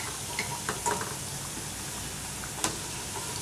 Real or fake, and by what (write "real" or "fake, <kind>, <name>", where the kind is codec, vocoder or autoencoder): real